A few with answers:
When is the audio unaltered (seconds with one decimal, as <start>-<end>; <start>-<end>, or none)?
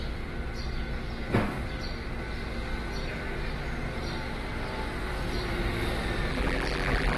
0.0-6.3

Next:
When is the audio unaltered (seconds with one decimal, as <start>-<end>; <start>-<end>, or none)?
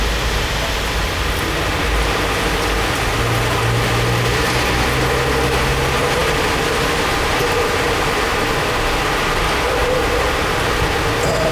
0.0-6.2; 8.5-11.5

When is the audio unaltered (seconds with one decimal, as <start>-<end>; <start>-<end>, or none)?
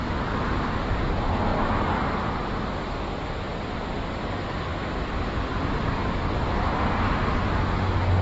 0.0-8.2